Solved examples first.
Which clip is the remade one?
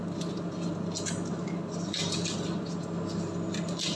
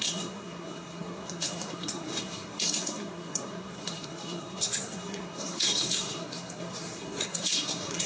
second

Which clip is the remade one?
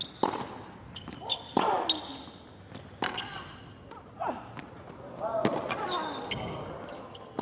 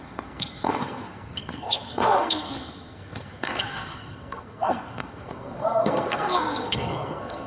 second